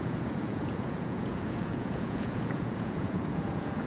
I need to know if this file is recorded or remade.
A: remade